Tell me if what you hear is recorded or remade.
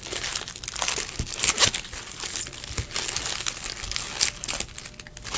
recorded